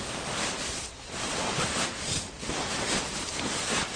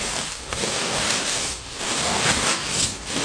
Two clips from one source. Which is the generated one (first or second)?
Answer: second